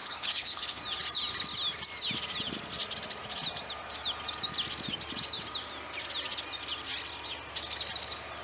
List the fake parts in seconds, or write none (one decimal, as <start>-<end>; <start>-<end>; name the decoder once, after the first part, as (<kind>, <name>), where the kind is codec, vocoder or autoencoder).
0.0-0.8 (codec, HILCodec)